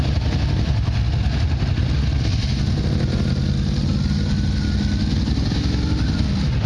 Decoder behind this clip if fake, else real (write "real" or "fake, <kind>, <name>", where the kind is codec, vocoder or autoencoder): real